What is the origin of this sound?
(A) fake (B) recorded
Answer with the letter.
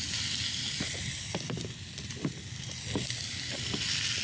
B